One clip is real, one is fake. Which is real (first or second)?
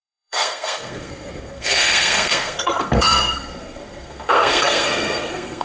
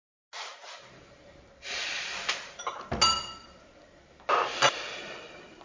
second